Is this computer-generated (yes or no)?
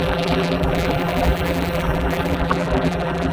yes